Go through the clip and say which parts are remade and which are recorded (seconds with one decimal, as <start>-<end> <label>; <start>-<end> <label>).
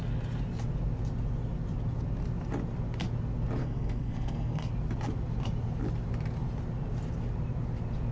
0.0-3.6 recorded; 3.6-4.7 remade; 4.7-8.1 recorded